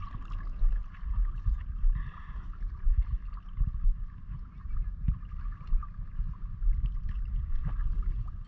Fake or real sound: real